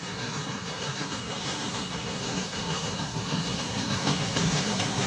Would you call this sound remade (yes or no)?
yes